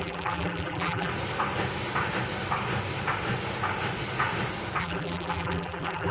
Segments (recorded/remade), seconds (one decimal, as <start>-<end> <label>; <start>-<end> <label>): 0.0-1.1 remade; 1.1-4.8 recorded; 4.8-6.1 remade